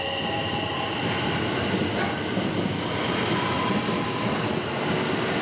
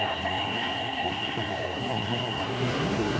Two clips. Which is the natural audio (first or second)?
first